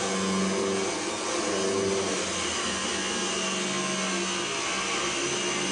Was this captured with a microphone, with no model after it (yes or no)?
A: yes